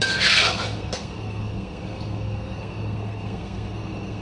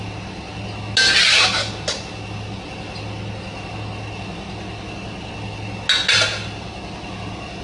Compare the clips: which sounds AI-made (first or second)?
first